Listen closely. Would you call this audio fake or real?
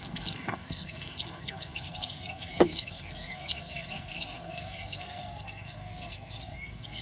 fake